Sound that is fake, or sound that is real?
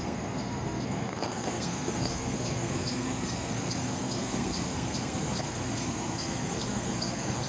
fake